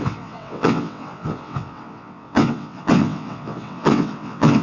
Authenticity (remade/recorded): remade